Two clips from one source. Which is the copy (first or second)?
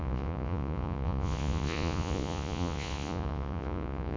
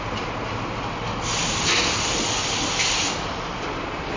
first